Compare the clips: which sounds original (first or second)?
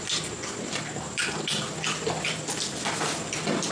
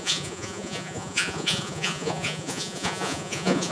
first